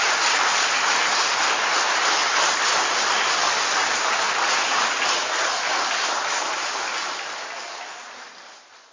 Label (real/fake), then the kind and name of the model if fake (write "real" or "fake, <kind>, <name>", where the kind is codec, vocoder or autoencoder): real